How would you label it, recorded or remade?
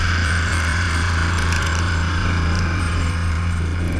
remade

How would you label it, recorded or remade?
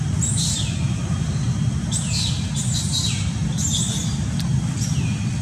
recorded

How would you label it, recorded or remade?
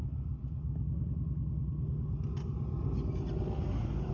recorded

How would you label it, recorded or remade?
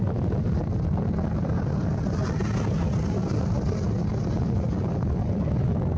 recorded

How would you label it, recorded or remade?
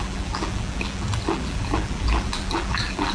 remade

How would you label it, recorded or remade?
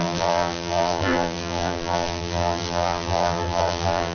remade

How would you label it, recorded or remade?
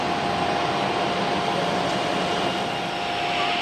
recorded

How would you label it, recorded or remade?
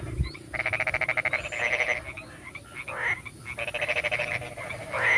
recorded